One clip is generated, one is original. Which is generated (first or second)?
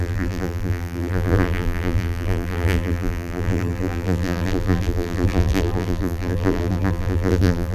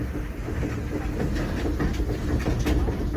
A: first